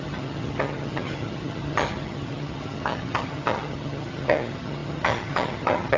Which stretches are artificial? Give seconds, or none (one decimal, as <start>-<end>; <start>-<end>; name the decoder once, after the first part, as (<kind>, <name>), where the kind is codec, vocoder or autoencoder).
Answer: 0.0-6.0 (vocoder, HiFi-GAN)